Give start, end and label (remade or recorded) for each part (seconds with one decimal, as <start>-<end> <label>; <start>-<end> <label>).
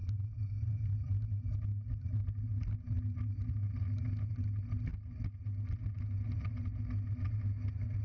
0.0-8.0 recorded